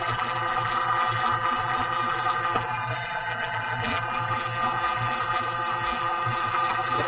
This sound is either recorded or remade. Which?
remade